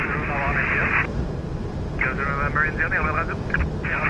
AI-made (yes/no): no